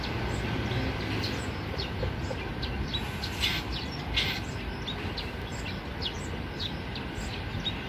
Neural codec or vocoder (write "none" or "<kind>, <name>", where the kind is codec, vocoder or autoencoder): none